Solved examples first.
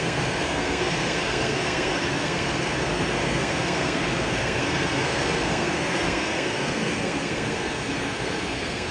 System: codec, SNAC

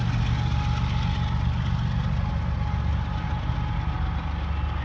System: none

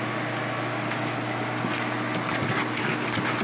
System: none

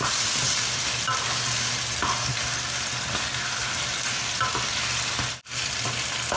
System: none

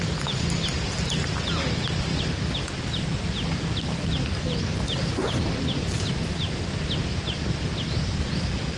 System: none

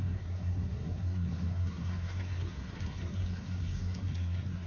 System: codec, SNAC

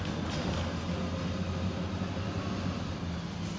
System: none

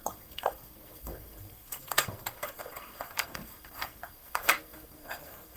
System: codec, SNAC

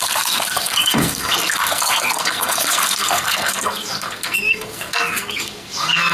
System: codec, SNAC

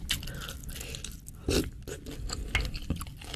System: none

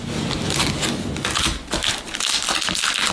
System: none